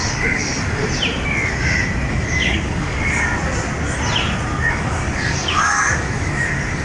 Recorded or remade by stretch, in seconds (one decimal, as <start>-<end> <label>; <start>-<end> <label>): 0.0-0.8 remade; 0.8-2.1 recorded; 2.1-3.3 remade; 3.3-4.7 recorded; 4.7-6.8 remade